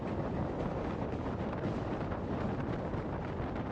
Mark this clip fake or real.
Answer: real